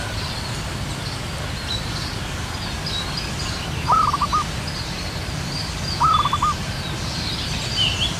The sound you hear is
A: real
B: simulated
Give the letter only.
A